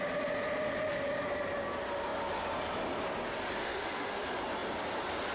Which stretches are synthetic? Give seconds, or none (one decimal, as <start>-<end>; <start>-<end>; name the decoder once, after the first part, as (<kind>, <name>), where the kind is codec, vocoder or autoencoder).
3.6-4.1 (autoencoder, DAC-VAE)